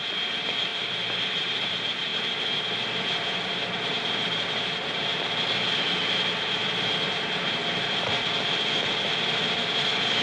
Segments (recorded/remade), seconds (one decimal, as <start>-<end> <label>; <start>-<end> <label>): 0.0-2.1 remade; 2.1-3.0 recorded; 3.0-5.1 remade; 5.1-7.1 recorded; 7.1-7.6 remade; 7.6-9.2 recorded; 9.2-10.2 remade